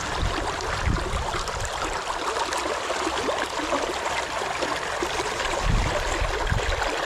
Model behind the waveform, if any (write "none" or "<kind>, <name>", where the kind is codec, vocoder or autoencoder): none